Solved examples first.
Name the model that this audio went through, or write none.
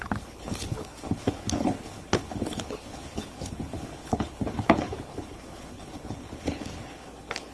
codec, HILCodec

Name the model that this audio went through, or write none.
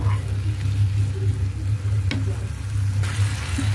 none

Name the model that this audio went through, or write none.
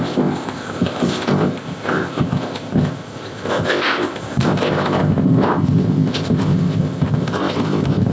codec, ZipCodec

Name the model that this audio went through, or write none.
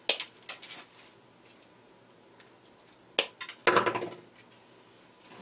none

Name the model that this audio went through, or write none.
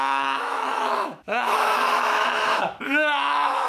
autoencoder, DAC-VAE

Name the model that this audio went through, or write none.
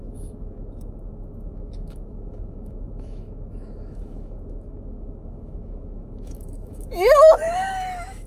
autoencoder, DAC-VAE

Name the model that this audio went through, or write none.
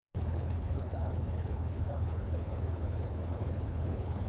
codec, HILCodec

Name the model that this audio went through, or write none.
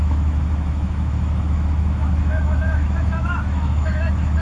autoencoder, DAC-VAE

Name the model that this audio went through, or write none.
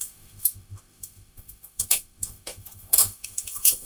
autoencoder, DAC-VAE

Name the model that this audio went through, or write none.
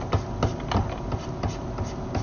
none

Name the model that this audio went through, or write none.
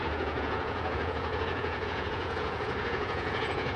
vocoder, Vocos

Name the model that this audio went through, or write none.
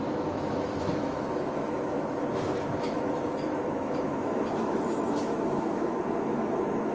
autoencoder, DAC-VAE